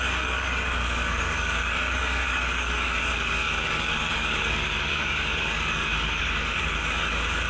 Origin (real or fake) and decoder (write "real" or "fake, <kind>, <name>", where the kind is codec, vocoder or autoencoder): fake, codec, DAC